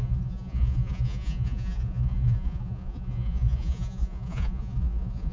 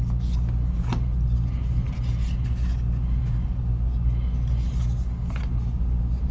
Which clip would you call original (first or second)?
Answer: second